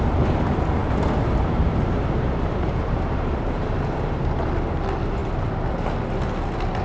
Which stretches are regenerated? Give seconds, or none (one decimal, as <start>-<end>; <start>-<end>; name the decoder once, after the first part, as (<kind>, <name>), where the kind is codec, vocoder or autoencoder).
0.8-4.5 (vocoder, BigVGAN v2)